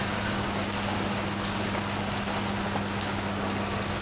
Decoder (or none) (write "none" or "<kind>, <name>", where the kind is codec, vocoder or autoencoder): none